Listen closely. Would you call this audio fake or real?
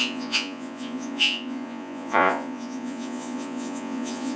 fake